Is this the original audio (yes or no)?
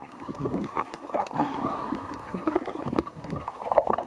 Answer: no